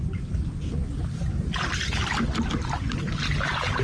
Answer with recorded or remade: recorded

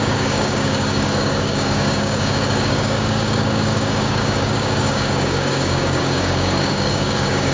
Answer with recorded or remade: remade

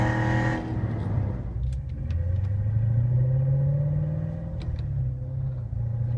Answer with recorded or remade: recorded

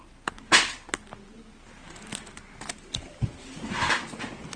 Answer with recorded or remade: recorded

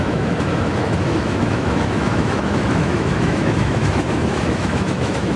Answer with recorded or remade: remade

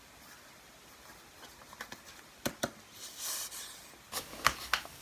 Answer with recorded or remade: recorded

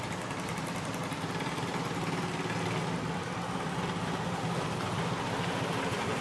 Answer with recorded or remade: recorded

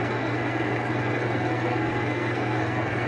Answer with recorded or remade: remade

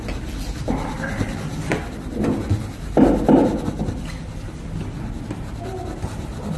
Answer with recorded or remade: recorded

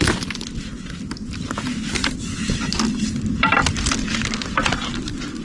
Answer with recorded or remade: recorded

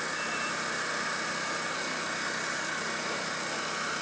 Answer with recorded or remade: recorded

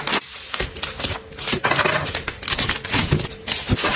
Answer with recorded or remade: recorded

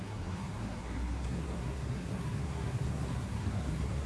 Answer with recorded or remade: remade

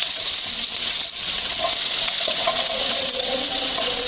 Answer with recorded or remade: remade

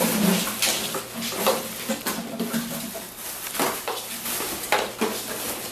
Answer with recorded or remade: recorded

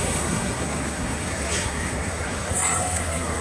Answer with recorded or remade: remade